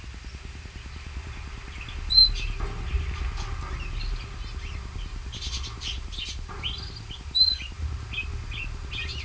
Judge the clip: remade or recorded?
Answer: recorded